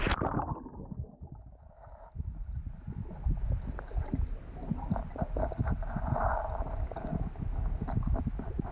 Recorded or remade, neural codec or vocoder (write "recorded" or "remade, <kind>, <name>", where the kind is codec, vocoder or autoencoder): recorded